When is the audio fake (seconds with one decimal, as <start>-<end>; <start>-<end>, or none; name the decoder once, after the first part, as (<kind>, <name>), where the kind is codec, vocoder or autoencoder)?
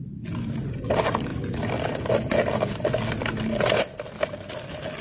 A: none